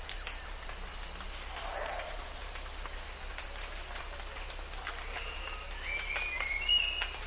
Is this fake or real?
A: real